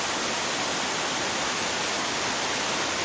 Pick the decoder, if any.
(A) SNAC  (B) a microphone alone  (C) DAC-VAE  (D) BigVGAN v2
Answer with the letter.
B